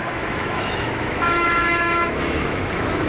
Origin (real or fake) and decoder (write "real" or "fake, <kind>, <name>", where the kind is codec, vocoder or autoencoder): fake, autoencoder, DAC-VAE